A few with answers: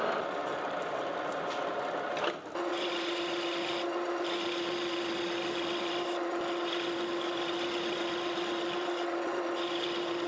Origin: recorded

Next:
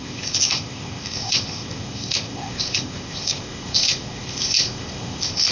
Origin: remade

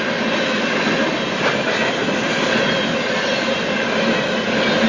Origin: recorded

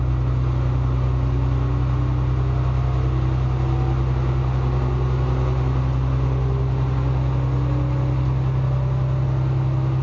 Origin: recorded